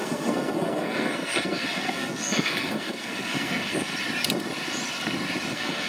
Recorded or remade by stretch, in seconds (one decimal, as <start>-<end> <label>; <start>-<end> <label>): 0.0-3.9 remade; 3.9-5.5 recorded; 5.5-5.9 remade